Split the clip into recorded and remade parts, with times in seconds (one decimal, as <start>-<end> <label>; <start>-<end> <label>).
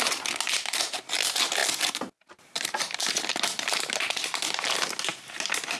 0.0-5.8 recorded